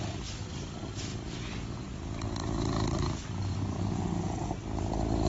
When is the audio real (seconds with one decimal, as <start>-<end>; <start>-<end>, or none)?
0.0-5.3